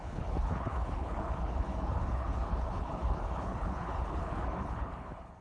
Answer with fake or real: fake